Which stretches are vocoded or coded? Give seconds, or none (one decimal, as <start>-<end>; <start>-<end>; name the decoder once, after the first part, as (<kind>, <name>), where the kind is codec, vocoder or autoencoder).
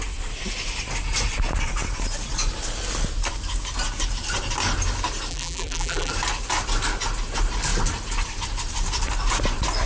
5.3-6.1 (vocoder, BigVGAN v2)